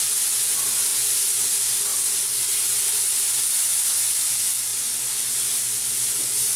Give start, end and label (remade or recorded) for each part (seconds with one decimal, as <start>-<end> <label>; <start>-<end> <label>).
0.0-6.6 recorded